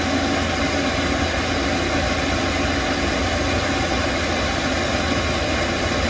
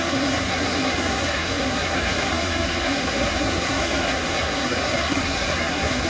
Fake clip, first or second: second